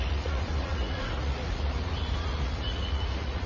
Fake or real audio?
fake